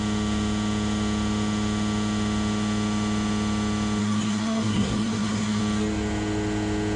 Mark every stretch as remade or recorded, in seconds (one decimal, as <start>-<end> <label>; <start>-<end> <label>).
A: 0.0-4.0 recorded; 4.0-5.6 remade; 5.6-7.0 recorded